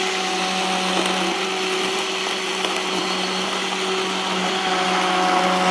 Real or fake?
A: real